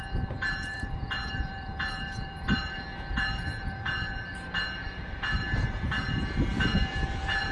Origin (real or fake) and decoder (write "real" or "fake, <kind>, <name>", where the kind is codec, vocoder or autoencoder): fake, vocoder, Vocos